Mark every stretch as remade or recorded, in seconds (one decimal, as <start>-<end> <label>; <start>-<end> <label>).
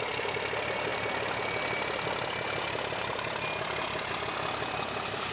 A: 0.0-5.3 recorded